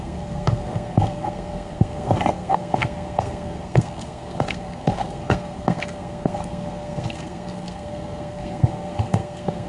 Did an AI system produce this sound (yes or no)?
yes